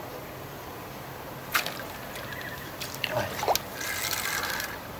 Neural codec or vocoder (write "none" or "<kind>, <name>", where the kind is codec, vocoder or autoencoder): none